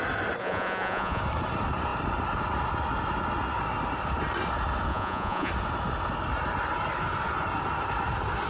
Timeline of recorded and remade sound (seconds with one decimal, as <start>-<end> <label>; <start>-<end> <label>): 0.0-0.4 recorded; 0.4-1.2 remade; 1.2-4.9 recorded; 4.9-5.5 remade; 5.5-8.5 recorded